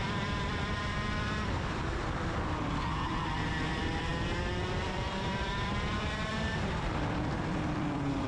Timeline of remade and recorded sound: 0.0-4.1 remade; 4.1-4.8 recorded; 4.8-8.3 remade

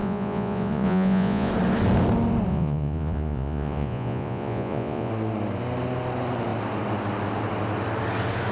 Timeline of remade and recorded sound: 0.0-1.5 remade; 1.5-2.5 recorded; 2.5-5.1 remade; 5.1-8.5 recorded

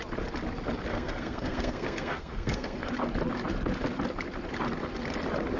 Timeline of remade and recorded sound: 0.0-0.9 recorded; 0.9-2.8 remade; 2.8-5.6 recorded

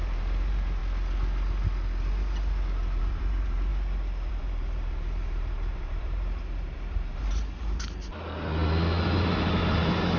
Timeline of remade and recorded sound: 0.0-0.8 remade; 0.8-3.0 recorded; 3.0-3.7 remade; 3.7-4.3 recorded; 4.3-8.0 remade; 8.0-9.0 recorded; 9.0-10.2 remade

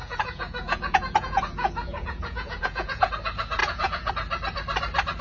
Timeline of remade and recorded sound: 0.0-3.1 remade; 3.1-3.6 recorded; 3.6-4.1 remade; 4.1-5.2 recorded

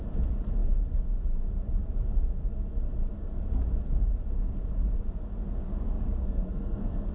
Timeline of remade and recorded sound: 0.0-6.2 recorded; 6.2-7.1 remade